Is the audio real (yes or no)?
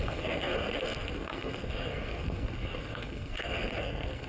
no